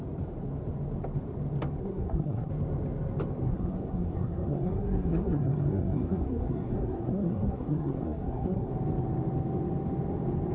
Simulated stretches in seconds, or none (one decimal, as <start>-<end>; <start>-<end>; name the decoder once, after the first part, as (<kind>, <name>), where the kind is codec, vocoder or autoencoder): 1.8-2.5 (codec, SNAC); 3.5-8.7